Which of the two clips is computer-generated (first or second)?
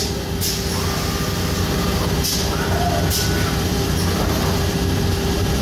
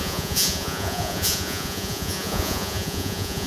second